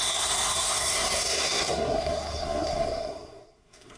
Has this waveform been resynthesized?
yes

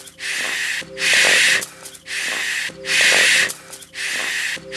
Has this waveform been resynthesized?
no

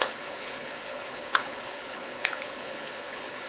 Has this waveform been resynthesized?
yes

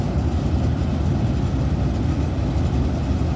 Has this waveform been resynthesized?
no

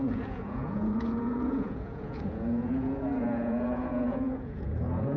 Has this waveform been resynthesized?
yes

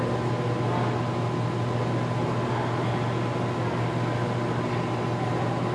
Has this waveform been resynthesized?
no